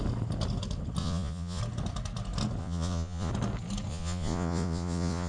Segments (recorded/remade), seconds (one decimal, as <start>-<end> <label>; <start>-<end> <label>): 0.0-1.0 recorded; 1.0-1.6 remade; 1.6-2.6 recorded; 2.6-3.3 remade; 3.3-3.9 recorded; 3.9-5.3 remade